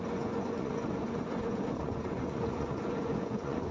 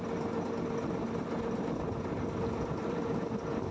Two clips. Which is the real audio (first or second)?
second